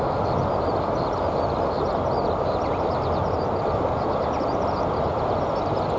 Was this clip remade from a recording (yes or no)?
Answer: no